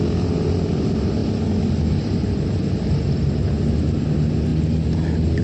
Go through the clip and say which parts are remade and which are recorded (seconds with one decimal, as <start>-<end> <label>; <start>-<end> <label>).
0.0-5.4 recorded